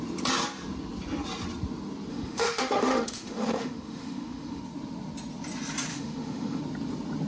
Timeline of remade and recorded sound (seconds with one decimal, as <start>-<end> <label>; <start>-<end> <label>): 0.0-2.1 recorded; 2.1-4.6 remade; 4.6-5.9 recorded; 5.9-6.6 remade; 6.6-7.3 recorded